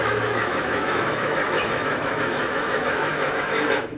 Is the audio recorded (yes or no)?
no